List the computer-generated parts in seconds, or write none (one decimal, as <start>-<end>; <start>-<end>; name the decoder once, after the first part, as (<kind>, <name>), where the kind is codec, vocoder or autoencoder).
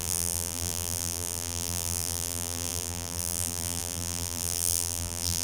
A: 0.0-5.4 (vocoder, BigVGAN v2)